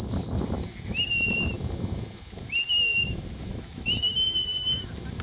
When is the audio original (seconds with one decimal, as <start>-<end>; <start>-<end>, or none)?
0.0-3.5; 4.8-5.2